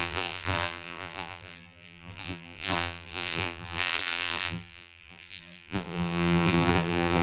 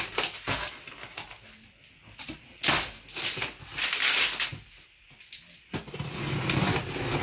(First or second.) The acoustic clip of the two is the second